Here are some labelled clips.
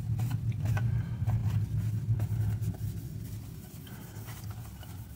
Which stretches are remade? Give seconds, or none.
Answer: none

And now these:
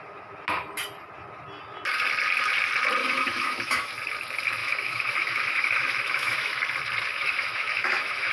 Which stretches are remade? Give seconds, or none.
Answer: 3.0-3.9 (autoencoder, DAC-VAE); 4.6-6.6; 7.1-8.3